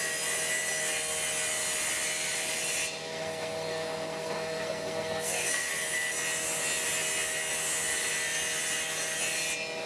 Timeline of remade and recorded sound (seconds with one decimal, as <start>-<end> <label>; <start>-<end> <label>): 0.0-3.0 recorded; 3.0-5.7 remade; 5.7-9.9 recorded